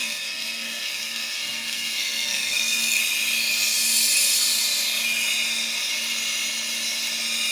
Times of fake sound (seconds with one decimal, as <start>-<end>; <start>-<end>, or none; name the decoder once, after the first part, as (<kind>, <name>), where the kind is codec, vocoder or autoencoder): 0.0-3.0 (codec, SNAC)